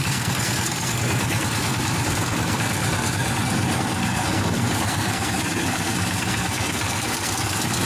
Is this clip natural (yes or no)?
no